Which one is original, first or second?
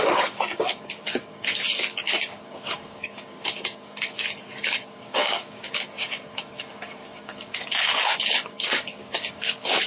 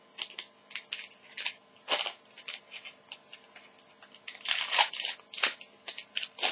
second